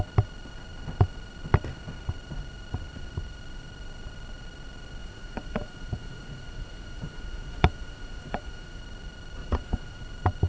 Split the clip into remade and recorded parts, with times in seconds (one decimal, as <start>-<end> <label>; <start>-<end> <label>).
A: 0.0-5.0 recorded; 5.0-8.8 remade; 8.8-9.4 recorded; 9.4-10.0 remade; 10.0-10.5 recorded